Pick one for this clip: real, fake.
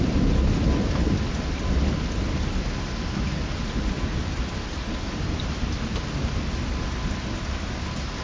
real